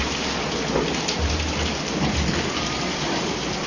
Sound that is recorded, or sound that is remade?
recorded